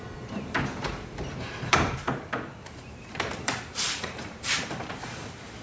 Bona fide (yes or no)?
no